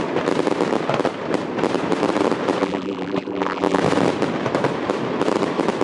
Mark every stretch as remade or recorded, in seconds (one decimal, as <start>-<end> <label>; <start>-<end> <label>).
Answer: 0.0-2.6 recorded; 2.6-3.8 remade; 3.8-5.8 recorded